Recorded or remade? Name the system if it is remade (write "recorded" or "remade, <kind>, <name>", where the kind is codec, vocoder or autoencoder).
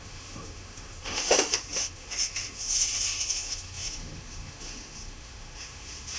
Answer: remade, autoencoder, DAC-VAE